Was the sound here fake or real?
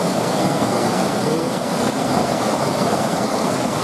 fake